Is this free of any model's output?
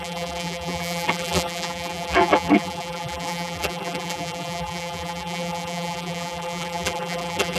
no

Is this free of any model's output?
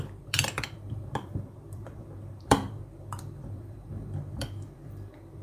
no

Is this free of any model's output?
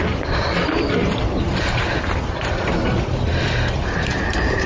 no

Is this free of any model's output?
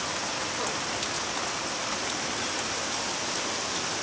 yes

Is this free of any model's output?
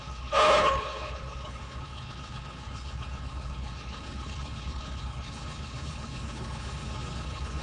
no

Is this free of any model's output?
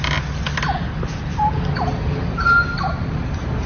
yes